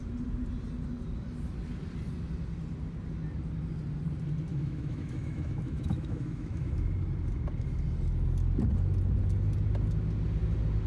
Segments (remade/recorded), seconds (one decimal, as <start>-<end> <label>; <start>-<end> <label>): 0.0-4.5 recorded; 4.5-6.7 remade; 6.7-10.9 recorded